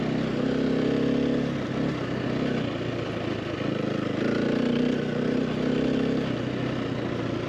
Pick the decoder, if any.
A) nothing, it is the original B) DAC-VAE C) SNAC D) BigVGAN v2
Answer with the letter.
A